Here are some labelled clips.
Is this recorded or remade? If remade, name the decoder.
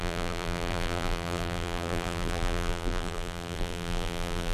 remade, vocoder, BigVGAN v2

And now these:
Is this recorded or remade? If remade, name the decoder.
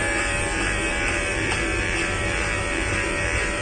remade, vocoder, BigVGAN v2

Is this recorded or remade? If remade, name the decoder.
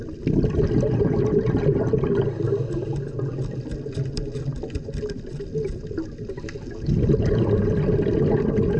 recorded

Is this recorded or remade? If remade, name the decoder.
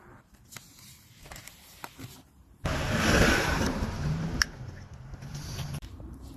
remade, vocoder, BigVGAN v2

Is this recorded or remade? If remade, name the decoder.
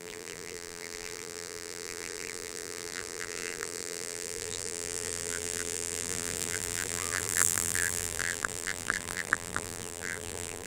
remade, vocoder, BigVGAN v2